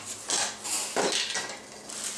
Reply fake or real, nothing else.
real